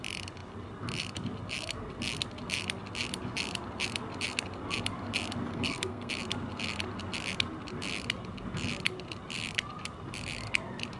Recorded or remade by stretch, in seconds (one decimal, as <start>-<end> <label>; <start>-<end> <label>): 0.0-5.5 recorded; 5.5-6.1 remade; 6.1-11.0 recorded